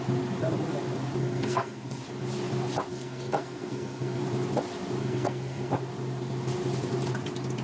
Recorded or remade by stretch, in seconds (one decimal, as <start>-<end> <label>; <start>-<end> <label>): 0.0-1.2 recorded; 1.2-2.0 remade; 2.0-2.9 recorded; 2.9-4.2 remade; 4.2-5.0 recorded; 5.0-5.7 remade; 5.7-7.6 recorded